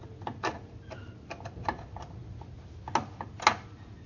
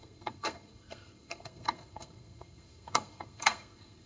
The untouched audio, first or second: first